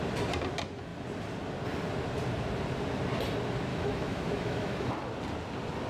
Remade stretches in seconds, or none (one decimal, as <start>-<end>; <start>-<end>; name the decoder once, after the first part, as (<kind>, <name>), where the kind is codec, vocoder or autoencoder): 3.7-4.9 (autoencoder, DAC-VAE)